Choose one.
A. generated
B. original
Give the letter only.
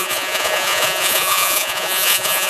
A